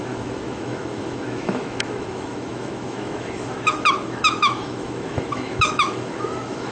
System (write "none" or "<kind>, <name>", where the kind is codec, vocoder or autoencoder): autoencoder, DAC-VAE